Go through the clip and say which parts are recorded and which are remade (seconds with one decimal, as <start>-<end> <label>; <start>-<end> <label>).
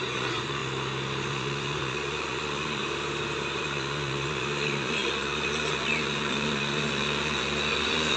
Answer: 0.0-0.6 remade; 0.6-1.3 recorded; 1.3-2.8 remade; 2.8-3.6 recorded; 3.6-8.2 remade